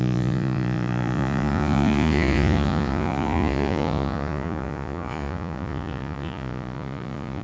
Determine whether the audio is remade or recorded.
remade